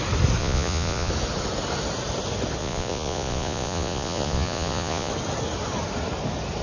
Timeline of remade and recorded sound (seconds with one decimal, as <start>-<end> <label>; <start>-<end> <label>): 0.0-0.4 recorded; 0.4-1.1 remade; 1.1-2.6 recorded; 2.6-5.1 remade; 5.1-6.6 recorded